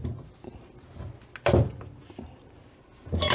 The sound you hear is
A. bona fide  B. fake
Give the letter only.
A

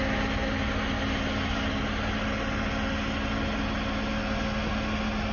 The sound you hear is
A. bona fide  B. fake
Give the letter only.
A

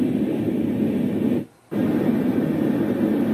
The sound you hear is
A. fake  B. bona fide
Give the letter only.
B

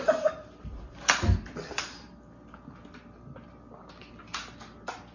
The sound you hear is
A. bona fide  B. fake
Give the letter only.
A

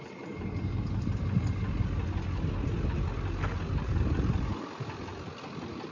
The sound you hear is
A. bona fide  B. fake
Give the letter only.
A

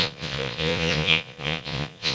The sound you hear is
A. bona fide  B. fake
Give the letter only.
B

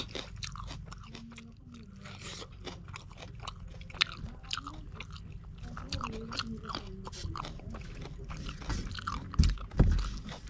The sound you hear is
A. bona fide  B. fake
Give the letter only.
A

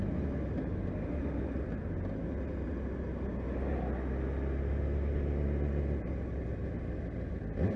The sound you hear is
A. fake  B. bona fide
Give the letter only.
B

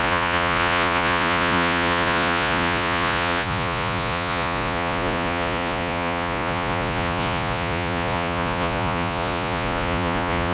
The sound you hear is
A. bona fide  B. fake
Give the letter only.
B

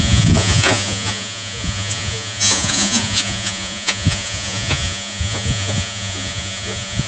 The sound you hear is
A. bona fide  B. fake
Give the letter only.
B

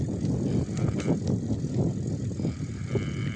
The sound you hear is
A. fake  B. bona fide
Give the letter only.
B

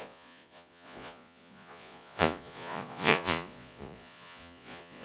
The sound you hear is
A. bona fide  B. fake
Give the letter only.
B